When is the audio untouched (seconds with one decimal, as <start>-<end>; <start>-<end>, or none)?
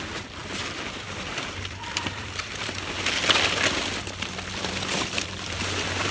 none